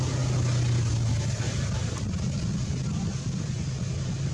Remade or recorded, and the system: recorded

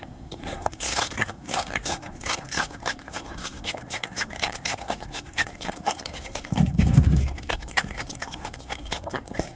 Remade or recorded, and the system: remade, codec, SNAC